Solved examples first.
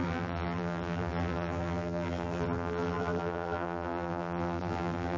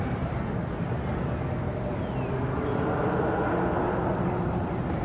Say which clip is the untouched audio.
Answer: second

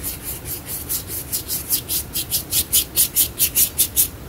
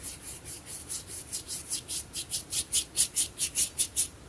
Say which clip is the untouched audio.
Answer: first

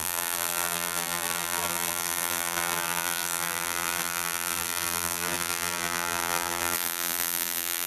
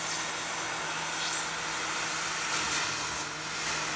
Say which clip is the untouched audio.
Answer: second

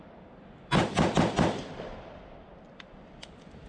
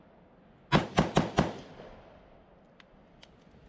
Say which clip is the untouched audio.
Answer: second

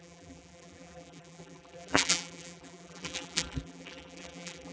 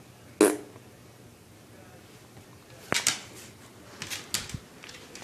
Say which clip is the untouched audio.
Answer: second